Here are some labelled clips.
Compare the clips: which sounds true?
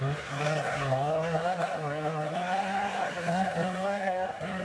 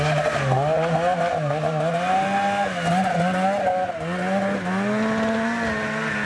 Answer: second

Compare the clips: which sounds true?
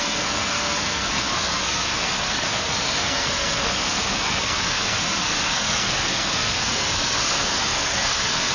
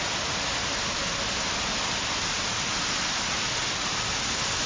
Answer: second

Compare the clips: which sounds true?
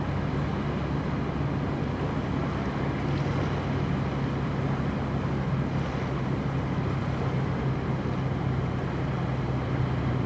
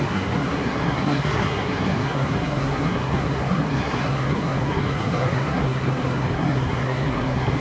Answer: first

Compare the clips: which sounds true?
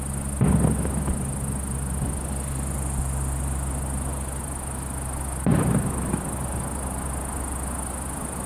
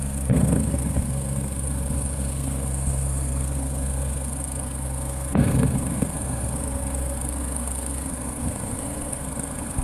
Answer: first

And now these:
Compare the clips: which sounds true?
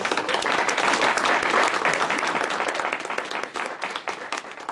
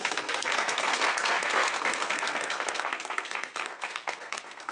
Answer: first